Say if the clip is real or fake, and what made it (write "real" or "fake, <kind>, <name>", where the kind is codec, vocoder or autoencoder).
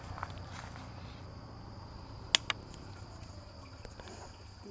real